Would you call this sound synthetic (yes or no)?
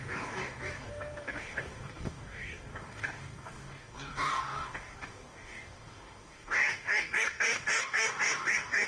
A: yes